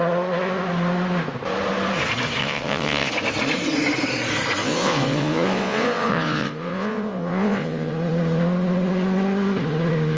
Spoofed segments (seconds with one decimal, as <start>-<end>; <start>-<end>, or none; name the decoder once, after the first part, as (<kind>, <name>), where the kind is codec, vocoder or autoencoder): 2.4-3.1 (vocoder, WaveNeXt); 4.6-7.9